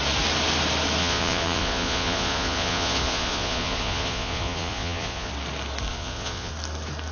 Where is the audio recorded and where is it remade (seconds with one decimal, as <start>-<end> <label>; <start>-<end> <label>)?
0.0-1.0 recorded; 1.0-5.3 remade; 5.3-5.9 recorded; 5.9-6.5 remade; 6.5-7.1 recorded